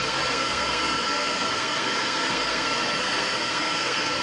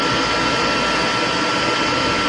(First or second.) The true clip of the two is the second